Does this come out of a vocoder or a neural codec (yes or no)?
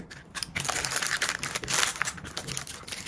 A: yes